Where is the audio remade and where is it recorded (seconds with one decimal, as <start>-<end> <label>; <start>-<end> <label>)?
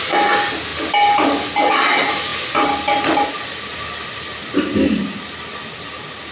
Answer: 0.0-6.3 recorded